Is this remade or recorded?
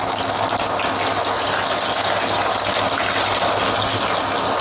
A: recorded